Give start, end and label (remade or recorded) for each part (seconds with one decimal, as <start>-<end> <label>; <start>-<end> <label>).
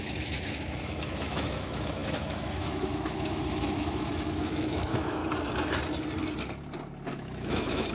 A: 0.0-5.2 remade; 5.2-7.1 recorded; 7.1-7.9 remade